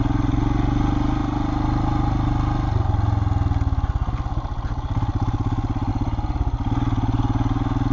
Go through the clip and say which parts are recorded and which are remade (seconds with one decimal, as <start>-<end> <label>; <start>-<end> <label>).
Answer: 0.0-7.9 recorded